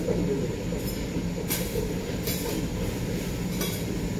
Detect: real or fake real